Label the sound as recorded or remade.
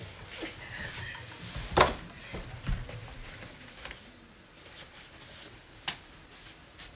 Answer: recorded